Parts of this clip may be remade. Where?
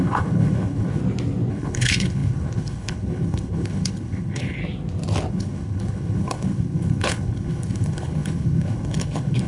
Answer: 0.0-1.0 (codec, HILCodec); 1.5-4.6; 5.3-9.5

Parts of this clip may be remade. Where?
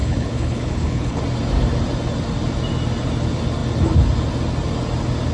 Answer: 0.0-1.2 (codec, HILCodec)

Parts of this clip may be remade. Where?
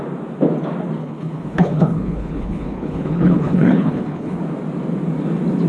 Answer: 1.0-4.4 (codec, HILCodec)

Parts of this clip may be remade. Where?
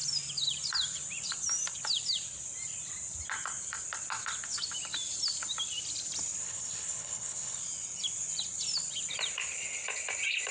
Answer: 6.4-7.6 (codec, HILCodec)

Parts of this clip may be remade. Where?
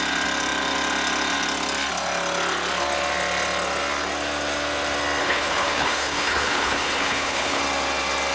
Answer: 5.2-7.6 (codec, HILCodec)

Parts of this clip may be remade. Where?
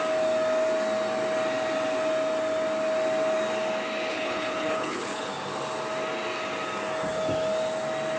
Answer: 4.1-5.3 (codec, HILCodec)